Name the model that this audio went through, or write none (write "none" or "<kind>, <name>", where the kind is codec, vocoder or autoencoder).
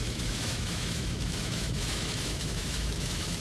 autoencoder, DAC-VAE